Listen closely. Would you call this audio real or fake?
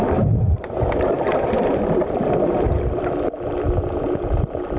real